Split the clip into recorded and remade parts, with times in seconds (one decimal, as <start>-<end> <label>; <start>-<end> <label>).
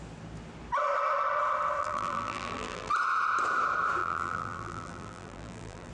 0.0-1.8 recorded; 1.8-2.9 remade; 2.9-4.0 recorded; 4.0-5.9 remade